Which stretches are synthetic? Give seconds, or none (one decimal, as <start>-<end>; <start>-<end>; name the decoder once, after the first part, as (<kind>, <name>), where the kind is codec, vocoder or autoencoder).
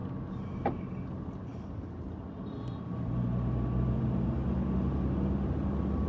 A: none